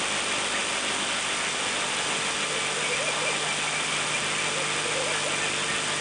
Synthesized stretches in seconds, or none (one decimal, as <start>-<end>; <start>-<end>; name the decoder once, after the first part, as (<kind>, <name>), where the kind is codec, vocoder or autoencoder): none